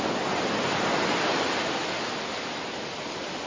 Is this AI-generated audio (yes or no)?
no